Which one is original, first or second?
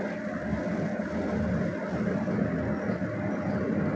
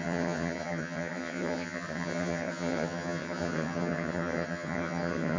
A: first